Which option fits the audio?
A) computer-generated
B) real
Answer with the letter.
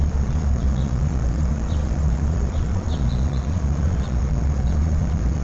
A